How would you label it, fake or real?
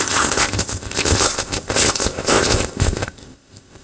fake